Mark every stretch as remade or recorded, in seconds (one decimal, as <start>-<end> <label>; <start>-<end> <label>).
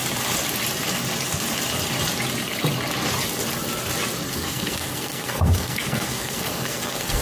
0.0-4.3 recorded; 4.3-7.2 remade